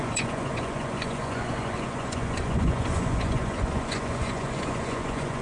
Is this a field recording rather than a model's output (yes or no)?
no